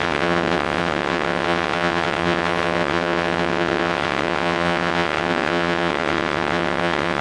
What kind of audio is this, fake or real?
fake